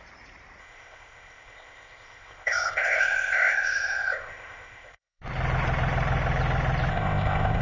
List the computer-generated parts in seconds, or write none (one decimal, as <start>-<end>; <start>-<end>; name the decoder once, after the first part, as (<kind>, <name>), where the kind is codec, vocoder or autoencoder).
0.6-5.2 (codec, ZipCodec); 6.9-7.6